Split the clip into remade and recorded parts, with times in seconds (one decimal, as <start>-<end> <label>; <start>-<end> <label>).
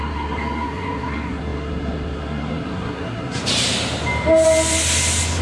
0.0-3.4 remade; 3.4-5.4 recorded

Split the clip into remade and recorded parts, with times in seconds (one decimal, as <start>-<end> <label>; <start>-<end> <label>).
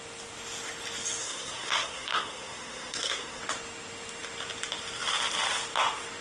0.0-1.2 recorded; 1.2-3.4 remade; 3.4-6.2 recorded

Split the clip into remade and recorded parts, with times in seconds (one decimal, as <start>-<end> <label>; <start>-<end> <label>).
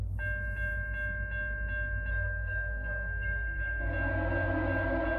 0.0-2.1 recorded; 2.1-3.8 remade; 3.8-5.2 recorded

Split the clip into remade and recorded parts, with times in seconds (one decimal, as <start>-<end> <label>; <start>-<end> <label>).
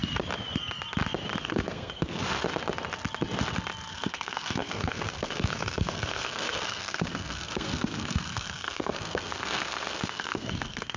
0.0-1.4 recorded; 1.4-2.2 remade; 2.2-3.9 recorded; 3.9-11.0 remade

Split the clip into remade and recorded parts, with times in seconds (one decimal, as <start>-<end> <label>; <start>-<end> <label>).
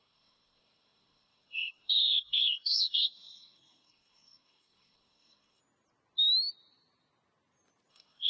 0.0-5.6 remade; 5.6-7.9 recorded; 7.9-8.3 remade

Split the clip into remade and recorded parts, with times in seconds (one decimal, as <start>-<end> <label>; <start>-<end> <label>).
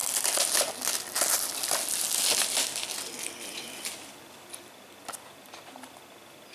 0.0-6.5 recorded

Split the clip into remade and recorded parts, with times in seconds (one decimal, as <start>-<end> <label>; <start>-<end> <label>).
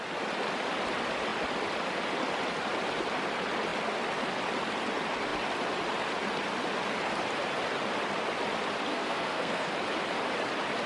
0.0-8.9 recorded; 8.9-9.7 remade; 9.7-10.9 recorded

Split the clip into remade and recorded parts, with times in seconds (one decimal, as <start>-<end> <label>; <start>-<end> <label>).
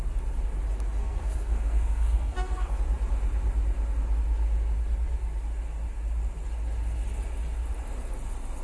0.0-1.0 recorded; 1.0-2.8 remade; 2.8-8.6 recorded